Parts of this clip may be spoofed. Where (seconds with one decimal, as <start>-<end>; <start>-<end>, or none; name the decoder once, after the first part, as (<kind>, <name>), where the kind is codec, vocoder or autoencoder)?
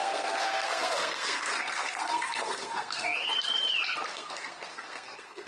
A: 0.0-3.3 (codec, SNAC); 4.1-5.5